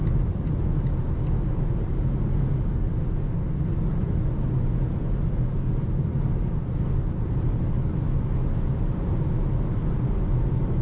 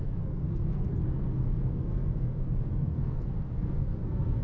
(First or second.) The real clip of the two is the first